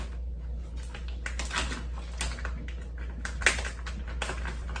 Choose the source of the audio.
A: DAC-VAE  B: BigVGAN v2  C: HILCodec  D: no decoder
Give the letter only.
D